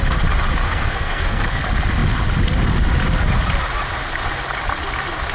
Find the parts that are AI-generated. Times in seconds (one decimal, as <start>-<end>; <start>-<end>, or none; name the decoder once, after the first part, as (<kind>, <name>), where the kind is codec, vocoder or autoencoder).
0.6-1.6 (codec, SNAC)